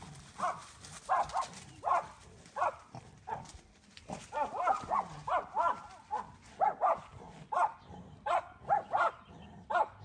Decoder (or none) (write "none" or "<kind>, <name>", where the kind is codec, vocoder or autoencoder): none